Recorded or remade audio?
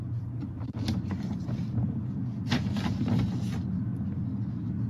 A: recorded